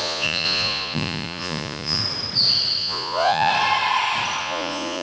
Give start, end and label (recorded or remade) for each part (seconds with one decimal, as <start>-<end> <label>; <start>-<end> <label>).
0.0-2.0 remade; 2.0-2.8 recorded; 2.8-3.5 remade; 3.5-4.4 recorded; 4.4-5.0 remade